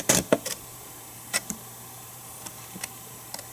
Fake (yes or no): yes